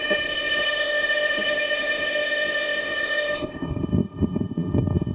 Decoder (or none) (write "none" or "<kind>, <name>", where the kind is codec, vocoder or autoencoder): codec, ZipCodec